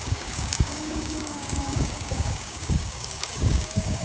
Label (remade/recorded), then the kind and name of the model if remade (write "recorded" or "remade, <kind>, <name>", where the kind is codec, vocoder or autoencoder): remade, codec, DAC